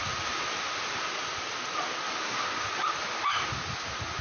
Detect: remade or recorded recorded